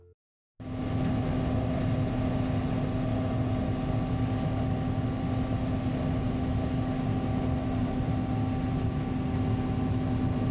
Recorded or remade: recorded